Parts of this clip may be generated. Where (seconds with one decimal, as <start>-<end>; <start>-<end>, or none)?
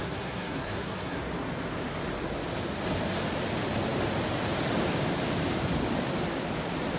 0.0-1.2